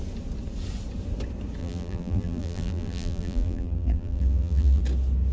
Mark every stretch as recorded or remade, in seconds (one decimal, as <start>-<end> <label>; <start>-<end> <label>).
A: 0.0-1.6 recorded; 1.6-4.8 remade; 4.8-5.3 recorded